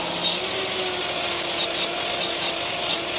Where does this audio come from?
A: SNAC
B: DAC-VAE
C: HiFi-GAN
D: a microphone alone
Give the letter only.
D